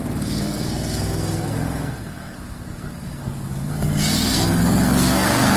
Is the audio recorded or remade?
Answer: remade